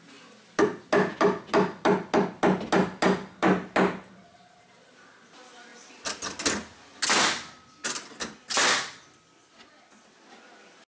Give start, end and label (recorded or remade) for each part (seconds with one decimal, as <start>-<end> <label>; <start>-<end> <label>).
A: 0.0-11.0 recorded